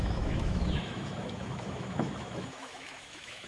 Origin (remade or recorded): remade